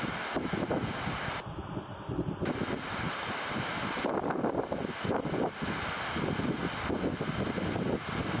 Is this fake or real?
real